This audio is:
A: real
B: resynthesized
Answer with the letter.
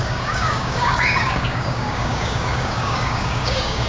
B